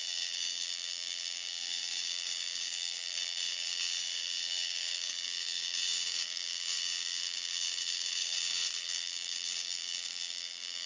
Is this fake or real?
fake